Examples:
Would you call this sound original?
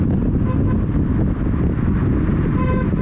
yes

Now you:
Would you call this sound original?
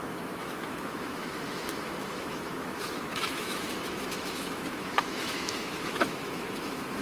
no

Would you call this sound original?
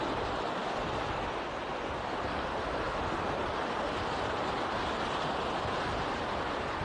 yes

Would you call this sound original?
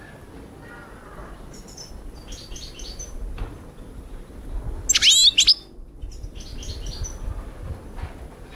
yes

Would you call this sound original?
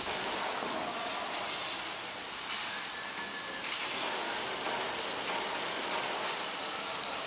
yes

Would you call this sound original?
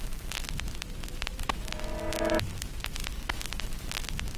yes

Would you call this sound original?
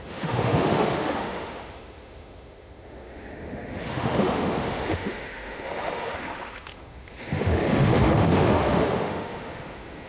no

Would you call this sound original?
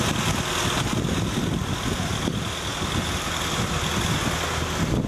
yes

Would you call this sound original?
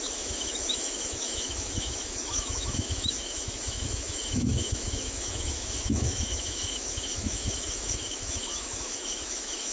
no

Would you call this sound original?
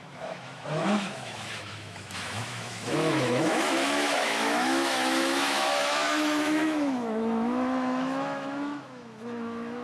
no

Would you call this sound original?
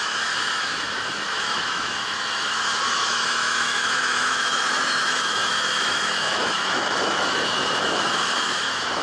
no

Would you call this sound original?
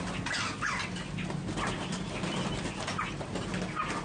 yes